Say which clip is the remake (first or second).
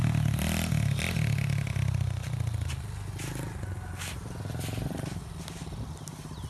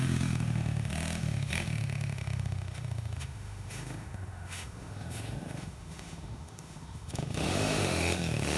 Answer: second